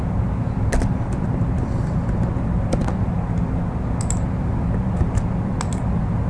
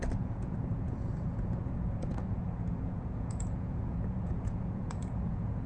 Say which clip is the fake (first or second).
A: second